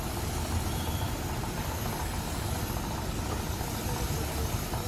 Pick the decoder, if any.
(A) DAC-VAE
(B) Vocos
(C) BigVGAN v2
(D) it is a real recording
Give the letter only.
D